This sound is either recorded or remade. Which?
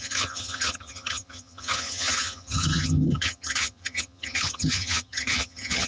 remade